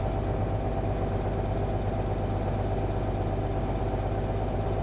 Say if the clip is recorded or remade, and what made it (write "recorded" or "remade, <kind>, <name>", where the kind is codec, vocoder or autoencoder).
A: recorded